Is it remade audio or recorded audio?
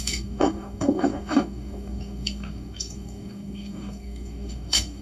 remade